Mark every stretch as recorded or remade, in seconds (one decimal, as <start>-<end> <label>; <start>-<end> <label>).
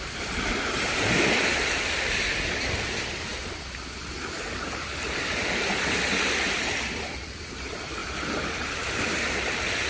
0.0-9.9 recorded